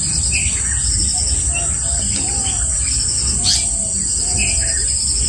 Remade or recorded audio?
recorded